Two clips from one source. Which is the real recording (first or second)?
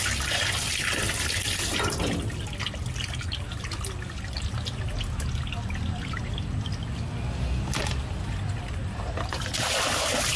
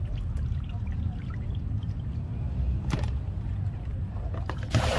first